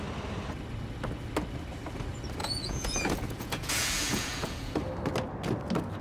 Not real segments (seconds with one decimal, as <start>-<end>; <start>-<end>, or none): 2.4-4.8